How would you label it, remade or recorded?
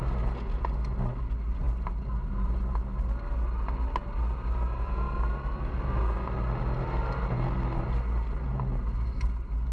recorded